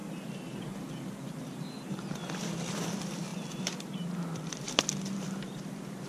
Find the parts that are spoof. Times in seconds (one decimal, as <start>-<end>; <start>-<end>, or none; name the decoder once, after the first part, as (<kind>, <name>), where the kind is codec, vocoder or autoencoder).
0.0-6.1 (vocoder, BigVGAN v2)